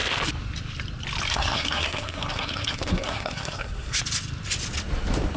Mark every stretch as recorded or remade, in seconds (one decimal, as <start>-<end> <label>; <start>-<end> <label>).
0.0-1.3 recorded; 1.3-4.0 remade; 4.0-5.4 recorded